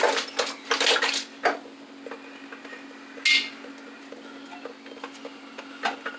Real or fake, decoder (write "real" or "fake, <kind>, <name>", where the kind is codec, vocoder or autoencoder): real